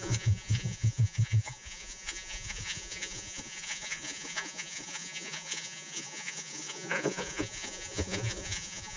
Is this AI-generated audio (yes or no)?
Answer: yes